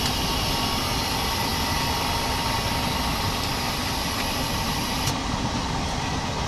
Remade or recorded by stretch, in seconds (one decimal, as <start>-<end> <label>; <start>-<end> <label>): 0.0-6.5 recorded